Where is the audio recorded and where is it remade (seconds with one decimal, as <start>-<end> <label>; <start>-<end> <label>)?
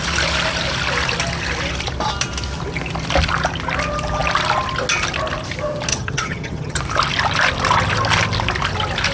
0.0-5.9 recorded; 5.9-6.8 remade; 6.8-9.1 recorded